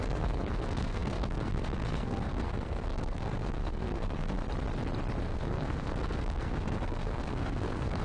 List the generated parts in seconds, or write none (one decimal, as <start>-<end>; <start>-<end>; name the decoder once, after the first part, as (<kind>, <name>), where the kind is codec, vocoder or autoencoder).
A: 0.0-4.4 (codec, SNAC); 5.2-8.0

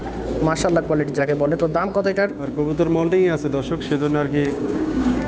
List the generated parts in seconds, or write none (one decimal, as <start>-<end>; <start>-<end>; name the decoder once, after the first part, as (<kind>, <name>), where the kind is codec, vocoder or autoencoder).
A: 1.2-5.3 (codec, DAC)

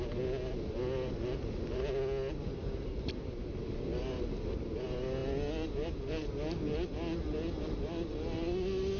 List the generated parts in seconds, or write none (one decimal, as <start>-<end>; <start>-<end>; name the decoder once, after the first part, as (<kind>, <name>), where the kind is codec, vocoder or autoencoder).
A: none

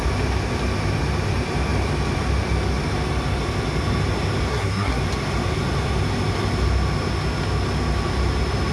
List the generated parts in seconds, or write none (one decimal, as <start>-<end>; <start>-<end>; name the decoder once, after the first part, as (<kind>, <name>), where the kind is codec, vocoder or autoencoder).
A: 4.5-5.0 (codec, SNAC)

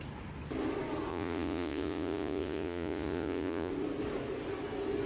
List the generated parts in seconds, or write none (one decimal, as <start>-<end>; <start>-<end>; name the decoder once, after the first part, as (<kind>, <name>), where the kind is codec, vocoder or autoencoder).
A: 1.1-3.7 (vocoder, Vocos)